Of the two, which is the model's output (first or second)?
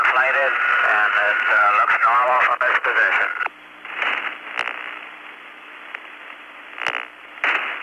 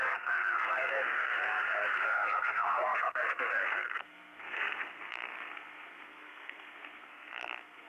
second